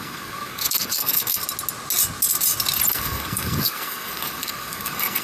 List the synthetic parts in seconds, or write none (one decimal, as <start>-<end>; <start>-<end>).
0.0-1.4; 2.9-5.2